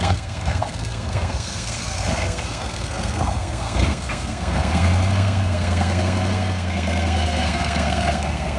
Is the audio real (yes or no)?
no